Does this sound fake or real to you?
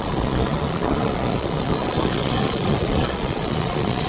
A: fake